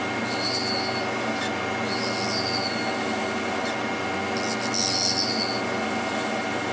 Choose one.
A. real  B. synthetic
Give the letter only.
A